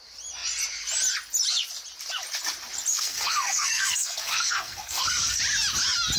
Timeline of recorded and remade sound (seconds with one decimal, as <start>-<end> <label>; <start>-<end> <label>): 0.0-2.9 recorded; 2.9-5.4 remade; 5.4-6.2 recorded